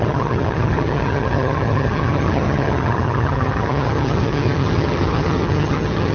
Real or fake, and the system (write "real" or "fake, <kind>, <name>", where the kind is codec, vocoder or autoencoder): fake, vocoder, HiFi-GAN